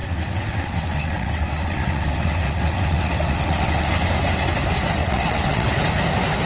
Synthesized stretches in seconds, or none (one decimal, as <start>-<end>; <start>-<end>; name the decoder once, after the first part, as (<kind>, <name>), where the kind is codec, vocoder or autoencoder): 0.0-3.9 (vocoder, WaveNeXt); 5.0-5.8